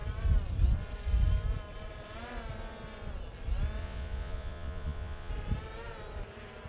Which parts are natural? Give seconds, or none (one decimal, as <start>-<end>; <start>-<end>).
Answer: 0.0-3.8; 5.3-6.7